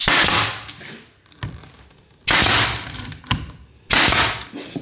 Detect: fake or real real